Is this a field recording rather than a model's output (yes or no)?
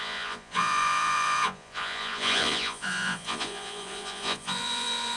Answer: no